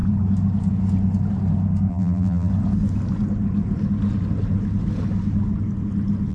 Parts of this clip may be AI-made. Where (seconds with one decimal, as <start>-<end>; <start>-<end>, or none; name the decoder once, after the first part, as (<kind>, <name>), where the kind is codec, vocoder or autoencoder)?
1.9-2.5 (vocoder, BigVGAN v2)